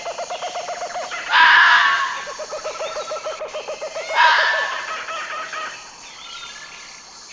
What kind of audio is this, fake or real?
real